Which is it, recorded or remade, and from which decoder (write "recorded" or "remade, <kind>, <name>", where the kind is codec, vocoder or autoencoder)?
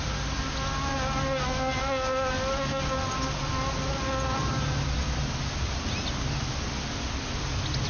recorded